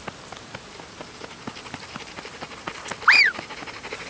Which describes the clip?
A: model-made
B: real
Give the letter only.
B